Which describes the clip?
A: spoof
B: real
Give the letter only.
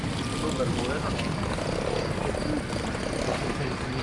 B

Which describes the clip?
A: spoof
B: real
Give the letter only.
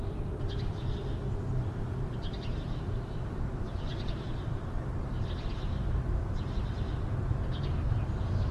B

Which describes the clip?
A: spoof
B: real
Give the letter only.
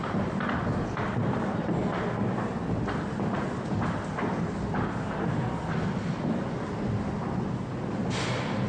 B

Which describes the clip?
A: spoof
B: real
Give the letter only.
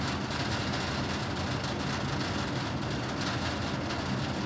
B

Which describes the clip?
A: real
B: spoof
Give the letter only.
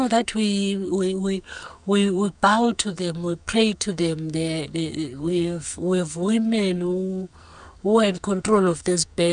B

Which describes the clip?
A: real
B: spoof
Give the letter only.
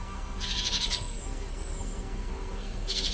B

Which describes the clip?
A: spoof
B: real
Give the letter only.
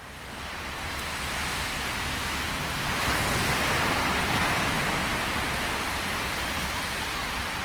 B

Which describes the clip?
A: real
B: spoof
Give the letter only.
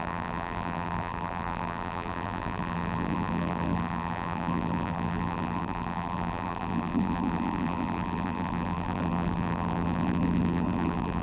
B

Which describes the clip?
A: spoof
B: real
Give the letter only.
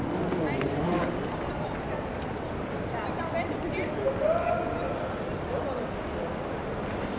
B